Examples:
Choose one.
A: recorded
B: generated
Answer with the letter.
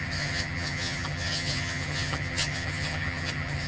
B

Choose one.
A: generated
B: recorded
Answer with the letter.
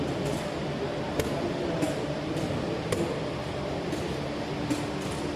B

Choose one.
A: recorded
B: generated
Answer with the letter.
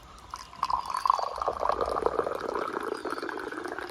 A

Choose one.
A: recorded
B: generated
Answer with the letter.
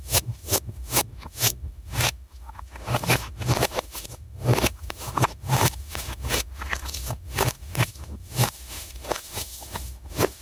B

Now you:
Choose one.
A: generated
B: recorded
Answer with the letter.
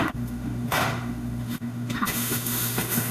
A